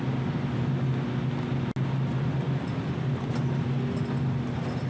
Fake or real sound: real